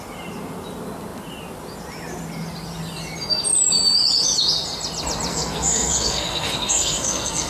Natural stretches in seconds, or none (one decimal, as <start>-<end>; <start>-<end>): 0.0-5.3

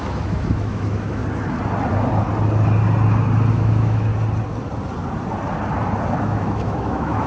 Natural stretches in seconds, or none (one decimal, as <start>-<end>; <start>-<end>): 1.2-3.5; 4.1-6.2